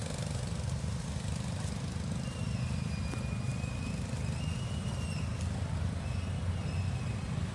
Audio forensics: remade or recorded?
recorded